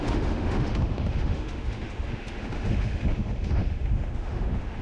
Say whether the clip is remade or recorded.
remade